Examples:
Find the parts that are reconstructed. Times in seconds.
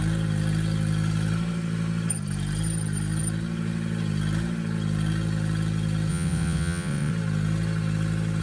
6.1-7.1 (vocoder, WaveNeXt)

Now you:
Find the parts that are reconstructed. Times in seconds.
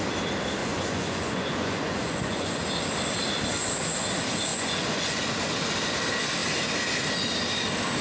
0.6-2.6 (vocoder, Vocos); 4.5-5.2